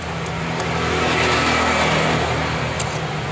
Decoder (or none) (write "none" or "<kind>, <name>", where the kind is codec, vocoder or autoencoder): none